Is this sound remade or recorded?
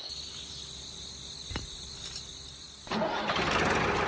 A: recorded